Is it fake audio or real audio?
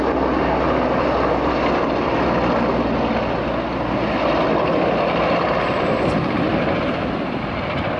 real